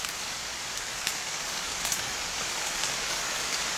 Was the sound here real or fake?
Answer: fake